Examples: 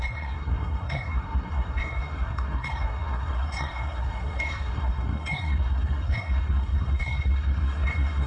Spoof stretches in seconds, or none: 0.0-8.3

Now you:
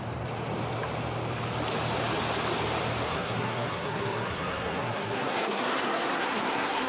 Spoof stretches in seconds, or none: 3.1-6.9

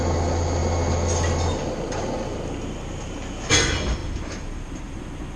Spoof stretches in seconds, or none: 4.0-5.0

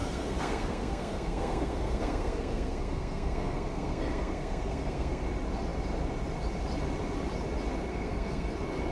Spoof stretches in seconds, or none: 0.0-5.2; 7.9-8.5

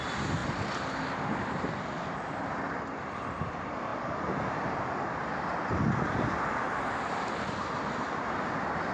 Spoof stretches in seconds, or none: 0.0-0.4; 2.3-3.9; 8.2-8.9